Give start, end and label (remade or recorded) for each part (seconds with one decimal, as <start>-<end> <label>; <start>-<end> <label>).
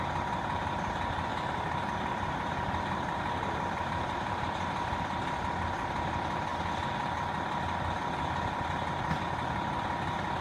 0.0-1.3 recorded; 1.3-4.7 remade; 4.7-10.4 recorded